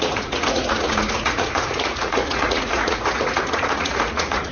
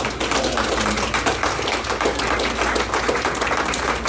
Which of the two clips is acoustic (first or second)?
second